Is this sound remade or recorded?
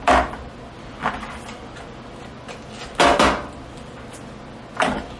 recorded